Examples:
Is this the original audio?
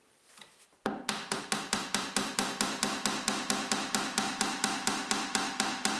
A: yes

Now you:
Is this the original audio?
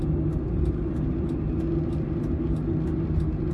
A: yes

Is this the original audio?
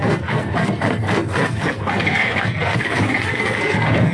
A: no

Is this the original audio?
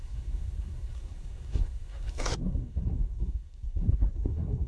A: no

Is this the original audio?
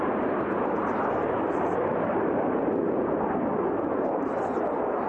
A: yes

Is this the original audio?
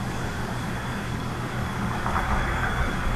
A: no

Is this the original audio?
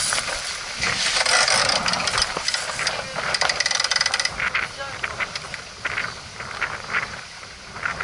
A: yes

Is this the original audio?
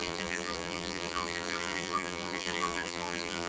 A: no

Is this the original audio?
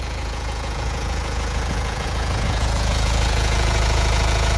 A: no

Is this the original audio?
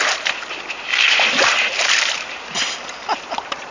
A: yes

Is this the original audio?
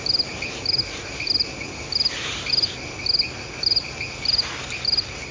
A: yes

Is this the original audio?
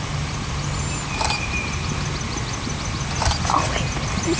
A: yes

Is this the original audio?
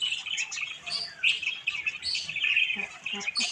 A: yes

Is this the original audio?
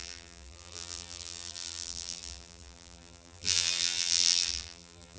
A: no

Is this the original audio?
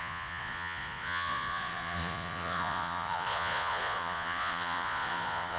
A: no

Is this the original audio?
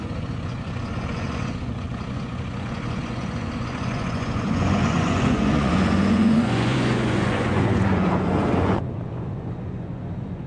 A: no